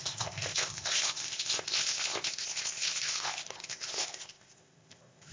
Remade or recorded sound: remade